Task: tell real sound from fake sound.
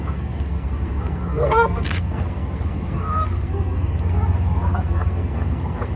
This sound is fake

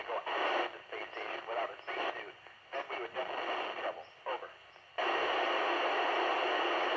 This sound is real